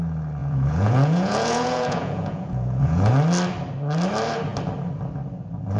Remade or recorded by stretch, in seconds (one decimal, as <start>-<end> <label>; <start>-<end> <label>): 0.0-0.4 recorded; 0.4-3.1 remade; 3.1-5.8 recorded